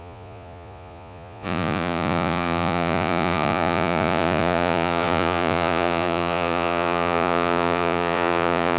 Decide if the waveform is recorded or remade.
remade